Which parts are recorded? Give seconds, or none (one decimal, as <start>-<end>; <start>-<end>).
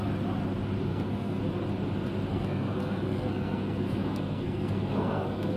0.0-0.9; 1.4-2.3